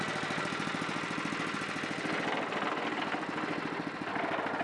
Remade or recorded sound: recorded